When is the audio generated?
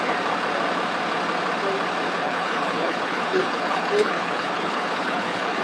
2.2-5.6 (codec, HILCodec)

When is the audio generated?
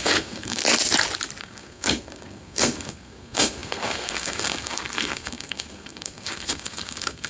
0.0-0.6 (codec, SNAC); 1.4-7.3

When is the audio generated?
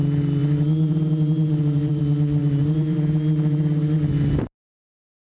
0.4-2.0 (vocoder, BigVGAN v2); 2.4-4.1